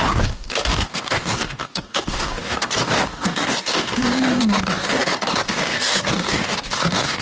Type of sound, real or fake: fake